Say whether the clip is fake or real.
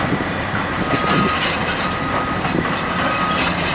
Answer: real